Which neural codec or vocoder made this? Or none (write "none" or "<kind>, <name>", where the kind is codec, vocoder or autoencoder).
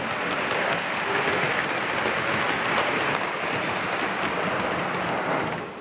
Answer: none